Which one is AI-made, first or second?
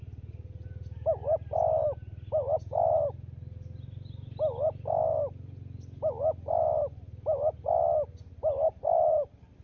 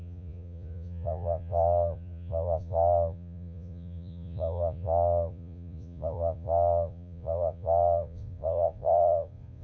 second